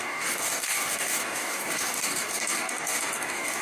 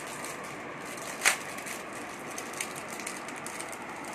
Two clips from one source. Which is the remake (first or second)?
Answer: first